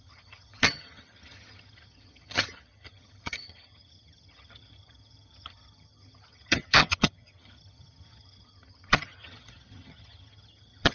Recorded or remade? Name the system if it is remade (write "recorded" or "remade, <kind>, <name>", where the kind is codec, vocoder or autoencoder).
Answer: remade, vocoder, HiFi-GAN